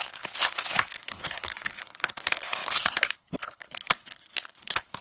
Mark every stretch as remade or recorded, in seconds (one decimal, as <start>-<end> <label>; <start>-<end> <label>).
0.0-5.0 remade

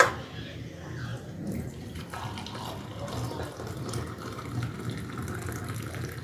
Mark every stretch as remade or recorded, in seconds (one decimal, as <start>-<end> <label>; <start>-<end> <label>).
0.0-1.1 recorded; 1.1-2.0 remade; 2.0-6.2 recorded

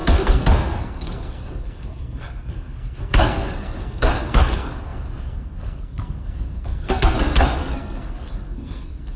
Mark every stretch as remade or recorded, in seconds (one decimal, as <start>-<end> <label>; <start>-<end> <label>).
0.0-9.2 remade

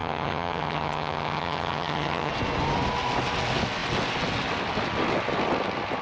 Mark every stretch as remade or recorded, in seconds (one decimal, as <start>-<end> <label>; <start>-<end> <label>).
0.0-2.3 remade; 2.3-6.0 recorded

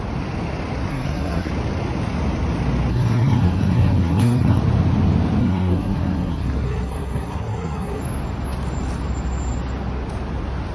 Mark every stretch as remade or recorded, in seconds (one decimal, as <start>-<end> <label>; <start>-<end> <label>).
0.0-0.9 recorded; 0.9-1.5 remade; 1.5-2.9 recorded; 2.9-4.6 remade; 4.6-5.4 recorded; 5.4-8.0 remade; 8.0-10.7 recorded